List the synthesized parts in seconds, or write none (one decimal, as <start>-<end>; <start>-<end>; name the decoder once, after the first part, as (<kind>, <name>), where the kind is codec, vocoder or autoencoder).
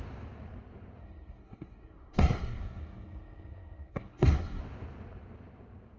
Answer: 1.0-4.6 (codec, SNAC)